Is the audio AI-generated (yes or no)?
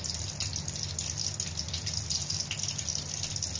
no